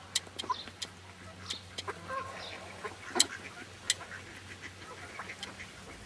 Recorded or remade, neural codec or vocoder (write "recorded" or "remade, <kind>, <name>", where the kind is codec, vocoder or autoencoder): recorded